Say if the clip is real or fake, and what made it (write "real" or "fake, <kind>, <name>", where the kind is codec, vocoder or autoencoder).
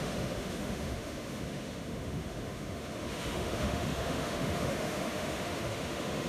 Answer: fake, autoencoder, DAC-VAE